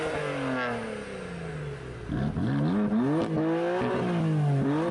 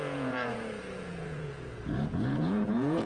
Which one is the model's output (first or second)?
second